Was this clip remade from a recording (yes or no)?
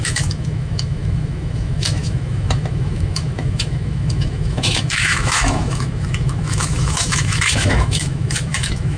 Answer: yes